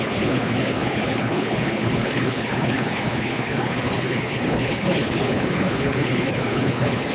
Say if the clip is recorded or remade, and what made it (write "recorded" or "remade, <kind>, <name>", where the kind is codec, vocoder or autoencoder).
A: remade, codec, HILCodec